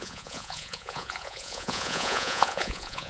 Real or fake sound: fake